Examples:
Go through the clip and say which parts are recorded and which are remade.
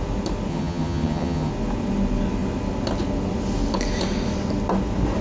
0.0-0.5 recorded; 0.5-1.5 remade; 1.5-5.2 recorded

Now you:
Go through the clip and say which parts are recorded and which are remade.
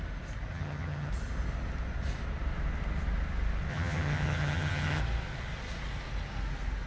0.0-0.5 recorded; 0.5-1.1 remade; 1.1-3.7 recorded; 3.7-5.0 remade; 5.0-6.9 recorded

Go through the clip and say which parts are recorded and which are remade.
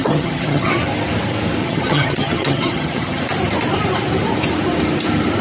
0.0-0.8 remade; 0.8-1.6 recorded; 1.6-3.2 remade; 3.2-5.4 recorded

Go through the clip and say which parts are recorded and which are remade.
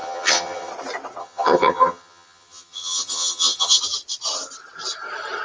0.0-0.7 remade; 0.7-1.2 recorded; 1.2-3.8 remade; 3.8-5.4 recorded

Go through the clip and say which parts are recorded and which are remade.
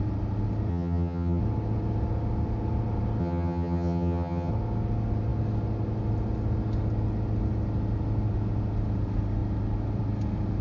0.0-0.7 recorded; 0.7-1.4 remade; 1.4-3.2 recorded; 3.2-4.5 remade; 4.5-10.6 recorded